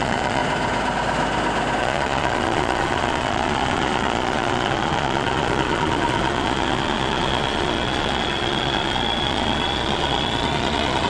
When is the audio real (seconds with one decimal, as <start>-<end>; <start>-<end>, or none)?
0.4-1.8